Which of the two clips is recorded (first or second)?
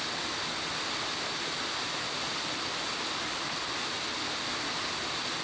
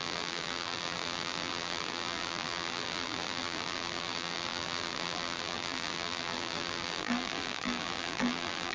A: first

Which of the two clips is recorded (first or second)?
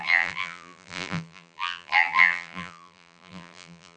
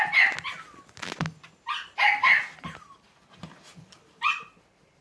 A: second